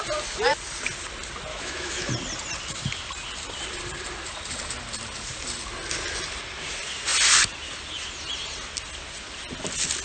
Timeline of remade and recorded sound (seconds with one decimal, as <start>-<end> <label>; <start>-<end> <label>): 0.0-1.5 recorded; 1.5-2.1 remade; 2.1-10.0 recorded